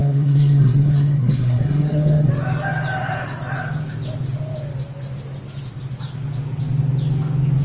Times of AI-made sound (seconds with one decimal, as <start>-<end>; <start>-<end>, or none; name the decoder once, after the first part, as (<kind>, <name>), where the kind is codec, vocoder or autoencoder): 0.0-2.3 (codec, SNAC)